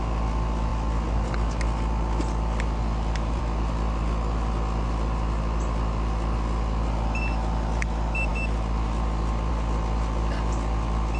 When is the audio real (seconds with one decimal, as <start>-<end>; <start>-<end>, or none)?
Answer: 0.0-11.2